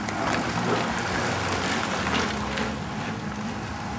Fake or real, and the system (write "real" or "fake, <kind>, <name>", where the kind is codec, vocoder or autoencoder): real